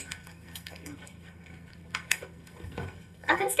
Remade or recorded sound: remade